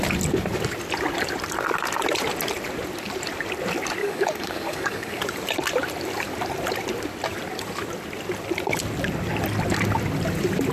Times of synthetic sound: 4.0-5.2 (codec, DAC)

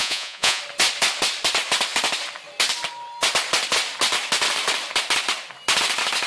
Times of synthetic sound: 0.0-0.6 (vocoder, Vocos)

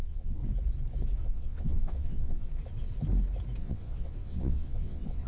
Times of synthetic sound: 0.0-0.4 (vocoder, WaveNeXt); 1.2-2.5; 3.6-5.3

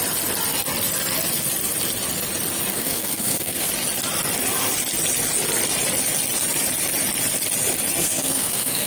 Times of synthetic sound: 2.7-3.7 (codec, SNAC); 8.0-8.9

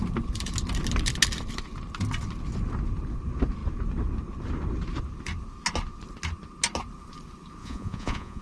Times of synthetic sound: 7.6-8.4 (vocoder, Vocos)

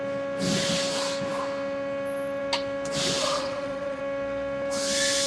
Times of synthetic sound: 3.2-4.0 (vocoder, WaveNeXt)